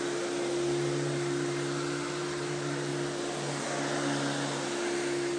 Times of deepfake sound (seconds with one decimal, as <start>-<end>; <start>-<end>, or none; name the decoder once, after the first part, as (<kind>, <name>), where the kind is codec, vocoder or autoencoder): none

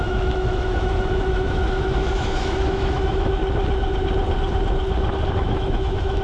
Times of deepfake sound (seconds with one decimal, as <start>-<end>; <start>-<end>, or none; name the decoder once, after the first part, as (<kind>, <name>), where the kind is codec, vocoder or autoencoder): 0.0-3.4 (autoencoder, DAC-VAE); 5.3-6.2

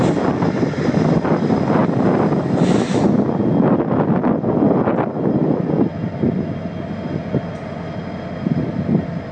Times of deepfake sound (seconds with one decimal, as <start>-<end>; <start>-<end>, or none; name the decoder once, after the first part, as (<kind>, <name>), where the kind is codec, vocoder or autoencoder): none